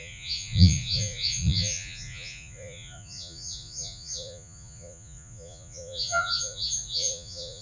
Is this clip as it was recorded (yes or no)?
no